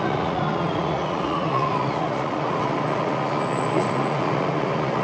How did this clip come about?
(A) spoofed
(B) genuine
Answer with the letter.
A